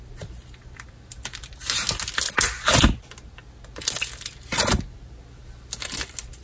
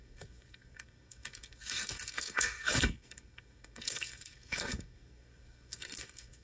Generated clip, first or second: second